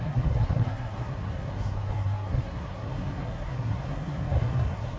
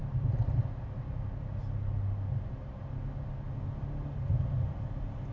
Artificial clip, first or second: first